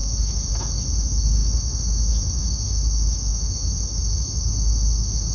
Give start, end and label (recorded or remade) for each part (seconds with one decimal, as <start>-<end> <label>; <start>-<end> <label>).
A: 0.0-5.3 remade